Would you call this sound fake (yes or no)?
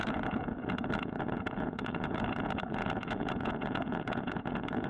yes